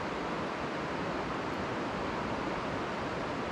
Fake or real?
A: real